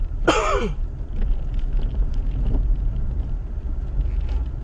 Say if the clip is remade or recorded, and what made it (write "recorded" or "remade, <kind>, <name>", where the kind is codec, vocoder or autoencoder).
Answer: recorded